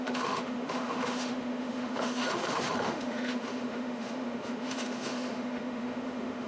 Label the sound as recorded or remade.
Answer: remade